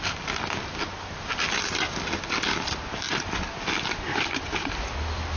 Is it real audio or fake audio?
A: real